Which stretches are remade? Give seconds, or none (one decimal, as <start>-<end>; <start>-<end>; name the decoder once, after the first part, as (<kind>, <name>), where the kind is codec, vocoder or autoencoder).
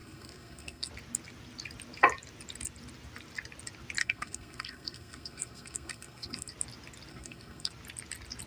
0.0-0.9 (codec, SNAC); 4.0-6.5; 7.1-7.7